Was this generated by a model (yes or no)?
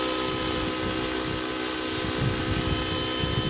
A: no